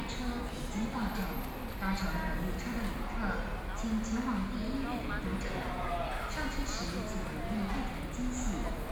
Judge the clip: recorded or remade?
recorded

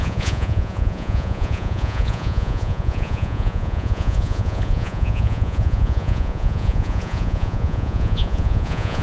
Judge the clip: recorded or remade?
remade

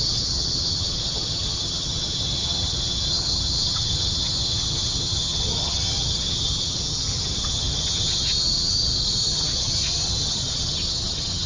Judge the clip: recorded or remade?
remade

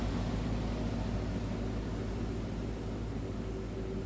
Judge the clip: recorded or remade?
recorded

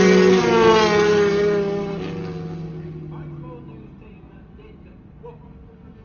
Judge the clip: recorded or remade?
recorded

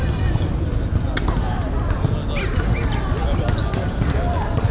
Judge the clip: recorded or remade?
recorded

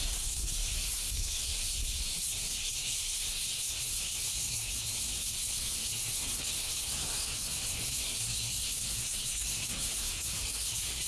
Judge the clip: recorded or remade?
remade